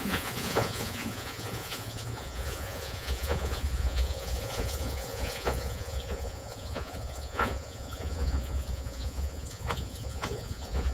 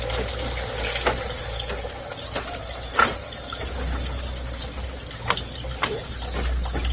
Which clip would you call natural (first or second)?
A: second